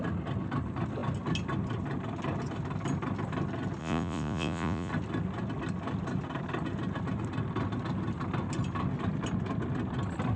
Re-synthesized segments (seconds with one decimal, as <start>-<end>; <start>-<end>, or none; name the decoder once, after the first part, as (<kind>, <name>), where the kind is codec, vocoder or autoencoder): 3.8-4.9 (vocoder, Vocos)